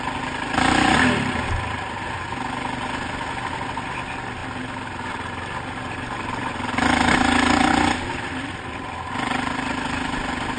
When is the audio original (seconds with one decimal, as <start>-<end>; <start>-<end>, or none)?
0.0-10.6